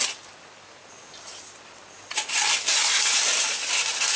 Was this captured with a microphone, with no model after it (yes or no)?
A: yes